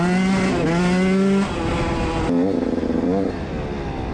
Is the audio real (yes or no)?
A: yes